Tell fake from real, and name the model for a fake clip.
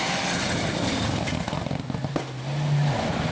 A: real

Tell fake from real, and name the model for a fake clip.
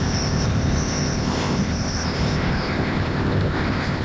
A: fake, codec, ZipCodec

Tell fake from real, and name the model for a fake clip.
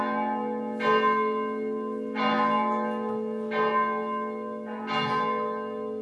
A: real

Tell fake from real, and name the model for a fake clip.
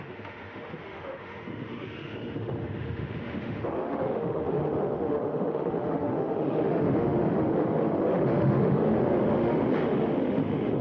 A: fake, autoencoder, DAC-VAE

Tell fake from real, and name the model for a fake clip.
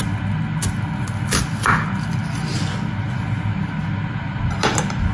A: real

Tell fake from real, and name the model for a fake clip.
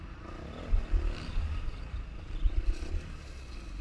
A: real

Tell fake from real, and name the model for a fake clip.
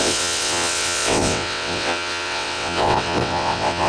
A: fake, vocoder, WaveNeXt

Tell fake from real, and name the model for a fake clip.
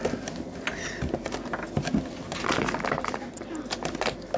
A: real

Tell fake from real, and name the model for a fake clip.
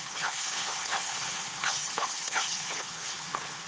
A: fake, codec, HILCodec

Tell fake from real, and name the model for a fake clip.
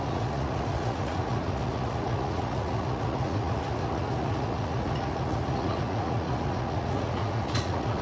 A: fake, vocoder, Vocos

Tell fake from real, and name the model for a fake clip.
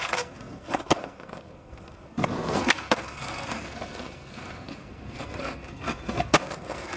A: fake, codec, SNAC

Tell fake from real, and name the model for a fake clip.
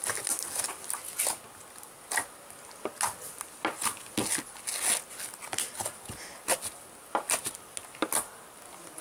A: real